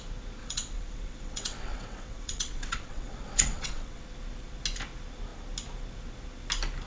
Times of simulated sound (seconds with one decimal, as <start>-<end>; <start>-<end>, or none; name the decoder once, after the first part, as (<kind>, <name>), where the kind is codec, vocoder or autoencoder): 0.4-4.0 (vocoder, WaveNeXt)